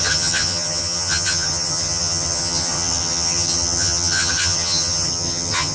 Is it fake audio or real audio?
fake